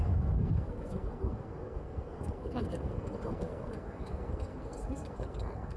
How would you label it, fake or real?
fake